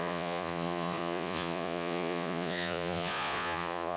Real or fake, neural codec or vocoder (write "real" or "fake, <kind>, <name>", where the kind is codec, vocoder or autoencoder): fake, vocoder, Vocos